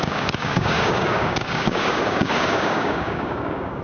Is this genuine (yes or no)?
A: no